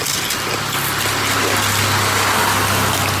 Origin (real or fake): real